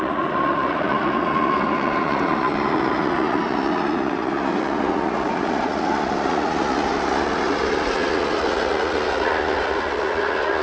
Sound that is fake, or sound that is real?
fake